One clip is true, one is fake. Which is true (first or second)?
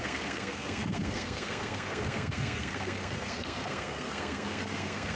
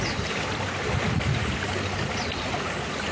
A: second